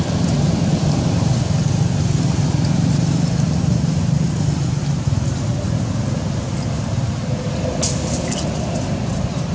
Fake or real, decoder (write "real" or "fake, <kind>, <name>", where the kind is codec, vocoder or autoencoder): real